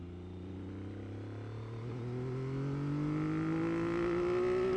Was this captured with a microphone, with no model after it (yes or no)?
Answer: yes